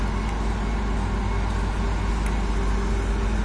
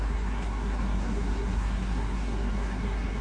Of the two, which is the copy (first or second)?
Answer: second